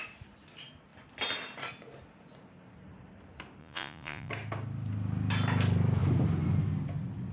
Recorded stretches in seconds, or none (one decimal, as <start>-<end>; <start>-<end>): 0.0-3.6; 4.3-7.3